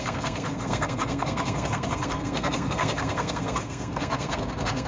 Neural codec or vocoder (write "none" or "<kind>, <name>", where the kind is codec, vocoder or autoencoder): codec, SNAC